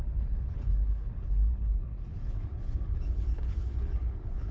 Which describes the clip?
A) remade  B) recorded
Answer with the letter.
A